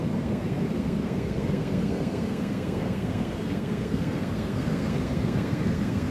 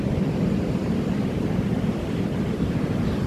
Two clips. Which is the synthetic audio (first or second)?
first